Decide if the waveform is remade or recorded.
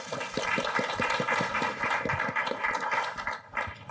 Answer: recorded